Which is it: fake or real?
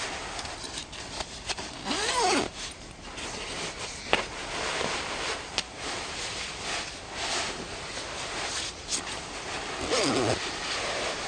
real